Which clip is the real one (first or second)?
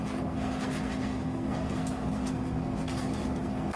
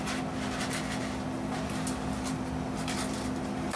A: second